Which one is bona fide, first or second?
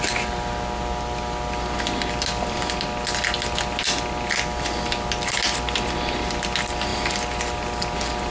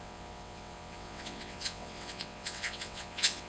first